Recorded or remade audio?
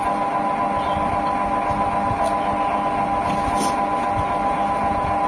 recorded